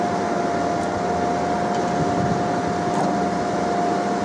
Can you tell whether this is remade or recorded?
recorded